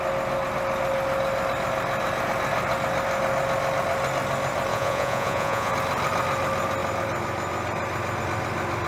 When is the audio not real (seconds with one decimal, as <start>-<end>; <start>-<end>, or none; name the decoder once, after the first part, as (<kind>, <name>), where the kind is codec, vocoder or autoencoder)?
4.7-5.7 (vocoder, Vocos)